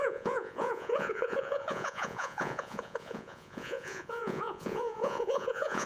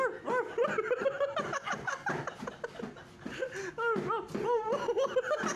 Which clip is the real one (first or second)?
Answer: second